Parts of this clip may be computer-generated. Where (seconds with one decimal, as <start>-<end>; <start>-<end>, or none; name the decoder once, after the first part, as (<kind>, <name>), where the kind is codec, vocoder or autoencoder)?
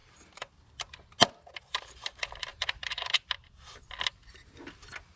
none